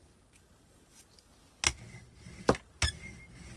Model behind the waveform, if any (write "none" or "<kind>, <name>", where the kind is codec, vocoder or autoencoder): none